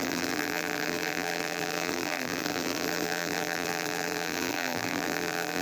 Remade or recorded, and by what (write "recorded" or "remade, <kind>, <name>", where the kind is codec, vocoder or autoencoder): remade, vocoder, BigVGAN v2